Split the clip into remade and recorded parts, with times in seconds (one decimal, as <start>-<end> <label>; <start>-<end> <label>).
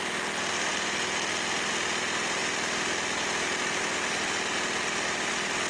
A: 0.0-5.7 recorded